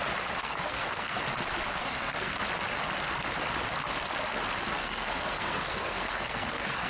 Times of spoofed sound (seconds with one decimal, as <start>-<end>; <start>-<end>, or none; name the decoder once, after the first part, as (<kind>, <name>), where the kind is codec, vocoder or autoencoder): 0.4-1.2 (codec, SNAC); 1.8-2.4; 4.8-6.9